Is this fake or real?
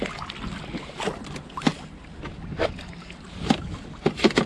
real